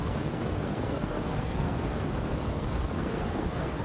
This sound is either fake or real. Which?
fake